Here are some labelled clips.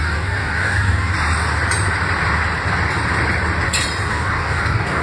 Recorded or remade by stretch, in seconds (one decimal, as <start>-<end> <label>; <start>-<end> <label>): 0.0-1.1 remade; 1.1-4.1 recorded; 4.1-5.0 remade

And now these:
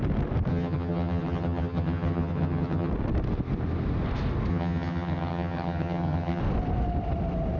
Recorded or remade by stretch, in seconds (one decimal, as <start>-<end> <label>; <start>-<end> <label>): 0.0-0.5 recorded; 0.5-2.9 remade; 2.9-4.5 recorded; 4.5-6.4 remade; 6.4-7.6 recorded

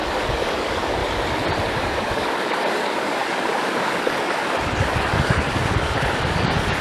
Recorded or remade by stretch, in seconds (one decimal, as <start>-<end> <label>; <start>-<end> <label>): 0.0-1.0 remade; 1.0-1.8 recorded; 1.8-6.8 remade

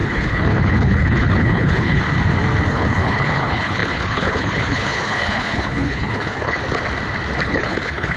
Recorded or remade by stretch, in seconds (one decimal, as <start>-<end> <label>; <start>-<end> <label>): 0.0-2.0 remade; 2.0-2.7 recorded; 2.7-6.6 remade; 6.6-7.4 recorded; 7.4-8.2 remade

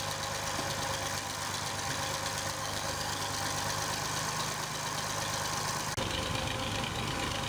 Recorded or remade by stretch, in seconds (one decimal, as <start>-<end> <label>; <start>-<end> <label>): 0.0-2.6 recorded; 2.6-3.2 remade; 3.2-7.5 recorded